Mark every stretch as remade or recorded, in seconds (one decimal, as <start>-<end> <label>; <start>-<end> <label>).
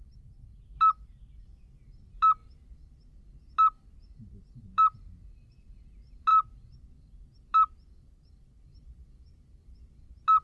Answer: 0.0-10.4 recorded